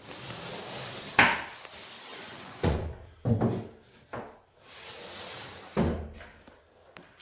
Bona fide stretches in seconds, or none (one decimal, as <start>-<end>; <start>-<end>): 0.0-2.1; 2.9-7.2